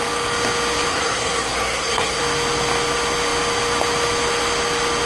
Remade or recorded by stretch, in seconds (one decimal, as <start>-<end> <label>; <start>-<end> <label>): 0.0-0.9 recorded; 0.9-2.2 remade; 2.2-5.1 recorded